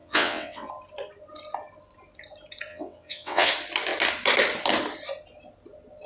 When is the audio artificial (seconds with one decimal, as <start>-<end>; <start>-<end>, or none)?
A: 0.0-0.7; 2.7-3.5